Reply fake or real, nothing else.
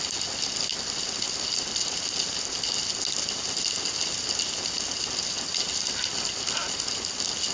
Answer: real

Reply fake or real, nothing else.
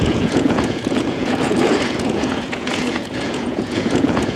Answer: fake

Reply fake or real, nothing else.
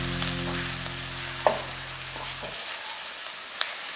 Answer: real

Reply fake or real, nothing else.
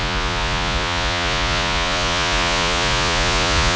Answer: fake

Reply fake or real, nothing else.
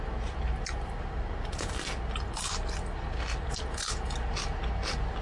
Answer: real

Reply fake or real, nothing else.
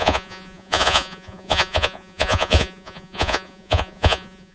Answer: fake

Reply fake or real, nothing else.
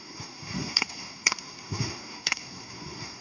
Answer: fake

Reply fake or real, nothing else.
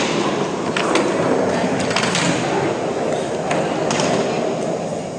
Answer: real